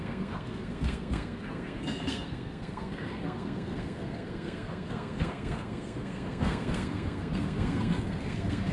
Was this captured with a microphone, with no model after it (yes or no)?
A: no